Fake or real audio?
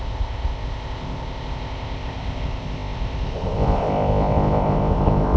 fake